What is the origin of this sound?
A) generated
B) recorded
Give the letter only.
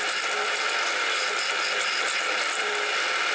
B